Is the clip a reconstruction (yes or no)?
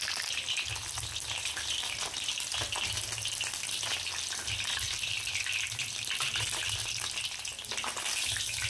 no